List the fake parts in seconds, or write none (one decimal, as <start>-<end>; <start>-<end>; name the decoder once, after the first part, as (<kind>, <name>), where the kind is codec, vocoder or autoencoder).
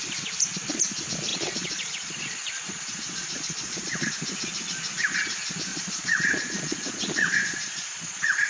1.3-4.1 (vocoder, Vocos); 5.7-8.5